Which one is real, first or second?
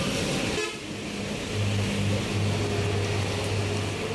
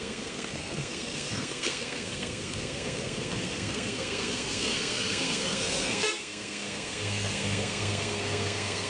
first